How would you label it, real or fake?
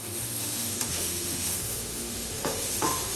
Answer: fake